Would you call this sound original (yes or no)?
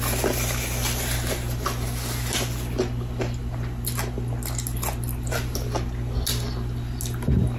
yes